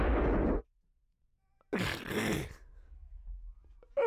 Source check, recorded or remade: recorded